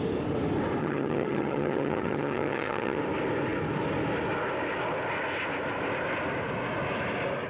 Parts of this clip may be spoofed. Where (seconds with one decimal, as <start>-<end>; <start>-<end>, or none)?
0.8-3.0